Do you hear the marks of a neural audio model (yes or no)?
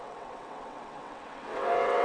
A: yes